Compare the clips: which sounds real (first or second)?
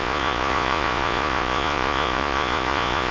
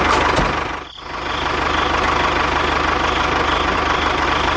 second